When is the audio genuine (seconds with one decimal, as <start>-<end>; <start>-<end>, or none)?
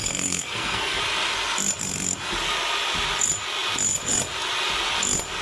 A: 1.0-5.4